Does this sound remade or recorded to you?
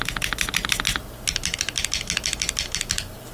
recorded